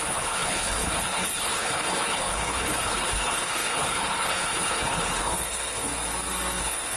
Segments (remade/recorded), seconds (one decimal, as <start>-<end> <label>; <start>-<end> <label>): 0.0-5.9 remade; 5.9-6.6 recorded; 6.6-7.0 remade